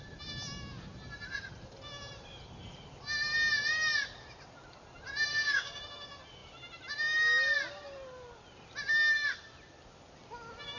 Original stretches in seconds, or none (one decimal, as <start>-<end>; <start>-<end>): 0.0-5.3; 5.8-10.8

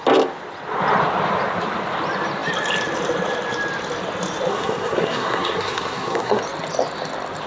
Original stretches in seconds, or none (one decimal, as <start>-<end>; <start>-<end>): 0.0-4.5; 6.4-7.5

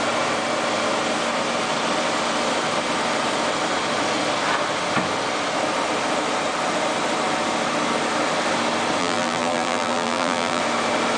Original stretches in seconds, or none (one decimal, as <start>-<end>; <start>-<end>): 0.0-9.0; 10.6-11.2

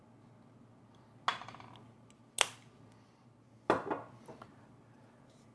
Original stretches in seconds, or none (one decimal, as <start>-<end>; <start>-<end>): 0.0-5.5

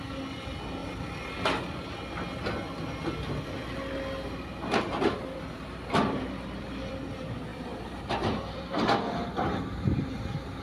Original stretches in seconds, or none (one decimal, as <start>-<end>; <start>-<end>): 0.0-4.9; 6.9-7.5; 9.6-10.6

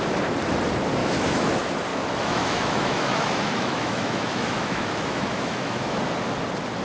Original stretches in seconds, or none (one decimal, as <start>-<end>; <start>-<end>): 0.0-1.0; 1.5-1.9; 6.0-6.8

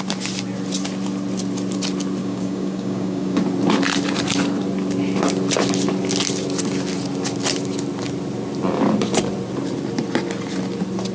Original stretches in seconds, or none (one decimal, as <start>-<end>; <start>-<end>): 0.0-2.2; 3.4-11.1